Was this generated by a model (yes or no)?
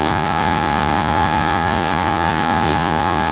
yes